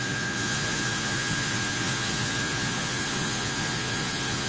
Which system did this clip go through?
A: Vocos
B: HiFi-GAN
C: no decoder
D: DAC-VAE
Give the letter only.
A